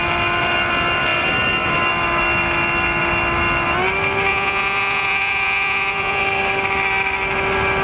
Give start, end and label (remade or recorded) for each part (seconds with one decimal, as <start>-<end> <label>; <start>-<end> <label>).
0.0-4.3 recorded; 4.3-6.2 remade; 6.2-7.8 recorded